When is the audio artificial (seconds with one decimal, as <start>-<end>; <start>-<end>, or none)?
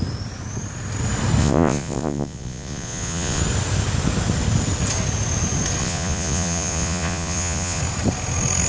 1.4-3.4; 5.8-7.8